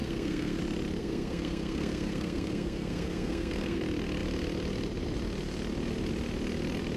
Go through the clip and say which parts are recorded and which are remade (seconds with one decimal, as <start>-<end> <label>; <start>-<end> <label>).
0.0-0.6 remade; 0.6-1.0 recorded; 1.0-3.8 remade; 3.8-7.0 recorded